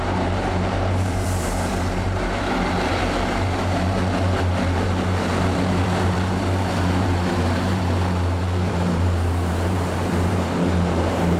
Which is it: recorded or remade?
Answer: remade